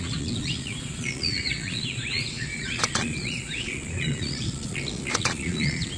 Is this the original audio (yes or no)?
no